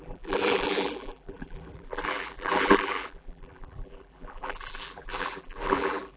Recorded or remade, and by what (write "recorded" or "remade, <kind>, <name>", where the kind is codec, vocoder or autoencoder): remade, vocoder, BigVGAN v2